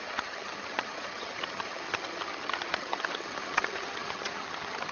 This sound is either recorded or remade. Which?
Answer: remade